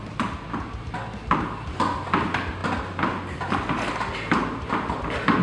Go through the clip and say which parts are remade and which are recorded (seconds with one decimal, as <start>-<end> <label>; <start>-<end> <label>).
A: 0.0-5.4 recorded

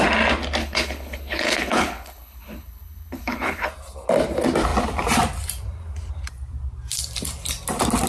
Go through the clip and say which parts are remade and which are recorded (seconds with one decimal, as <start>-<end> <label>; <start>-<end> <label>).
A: 0.0-0.6 recorded; 0.6-3.7 remade; 3.7-8.1 recorded

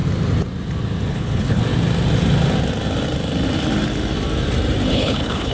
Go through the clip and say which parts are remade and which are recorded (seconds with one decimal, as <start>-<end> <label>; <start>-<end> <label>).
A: 0.0-1.1 recorded; 1.1-1.6 remade; 1.6-4.9 recorded; 4.9-5.5 remade

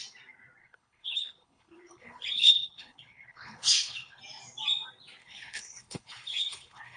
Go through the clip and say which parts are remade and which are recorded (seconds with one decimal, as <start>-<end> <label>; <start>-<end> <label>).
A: 0.0-0.6 recorded; 0.6-4.2 remade; 4.2-5.2 recorded; 5.2-7.0 remade

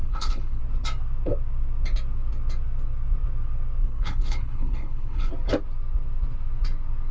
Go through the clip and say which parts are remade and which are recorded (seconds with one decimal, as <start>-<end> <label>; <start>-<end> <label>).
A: 0.0-0.6 remade; 0.6-3.8 recorded; 3.8-5.3 remade; 5.3-7.1 recorded

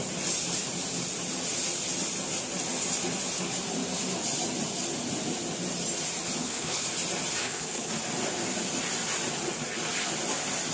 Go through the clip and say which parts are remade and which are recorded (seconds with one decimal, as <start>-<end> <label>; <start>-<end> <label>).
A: 0.0-6.4 recorded; 6.4-6.9 remade; 6.9-7.4 recorded; 7.4-7.9 remade; 7.9-10.7 recorded